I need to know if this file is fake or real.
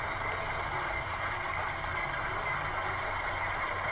real